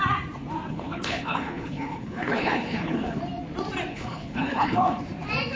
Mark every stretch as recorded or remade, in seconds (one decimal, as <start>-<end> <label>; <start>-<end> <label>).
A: 0.0-0.7 recorded; 0.7-3.2 remade; 3.2-3.9 recorded; 3.9-5.0 remade; 5.0-5.6 recorded